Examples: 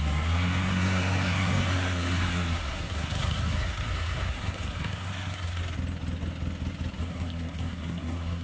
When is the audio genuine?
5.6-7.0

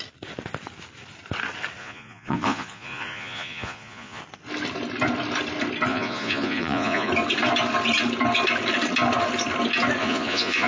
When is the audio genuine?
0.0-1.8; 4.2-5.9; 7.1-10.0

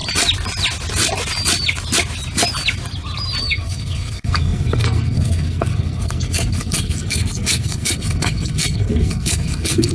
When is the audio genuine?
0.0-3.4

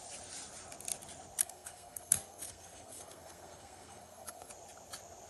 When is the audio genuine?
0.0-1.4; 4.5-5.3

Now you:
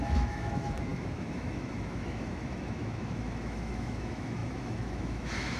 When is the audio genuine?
none

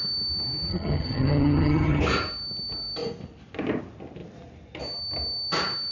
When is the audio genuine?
0.0-0.7; 2.0-5.9

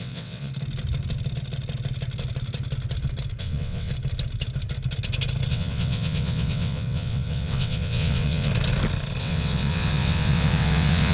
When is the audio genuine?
0.5-3.4; 3.9-5.5; 8.5-9.2

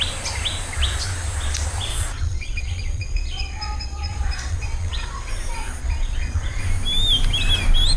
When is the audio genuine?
0.0-1.9; 5.3-5.8; 6.6-8.0